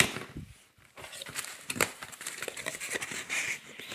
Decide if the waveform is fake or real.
fake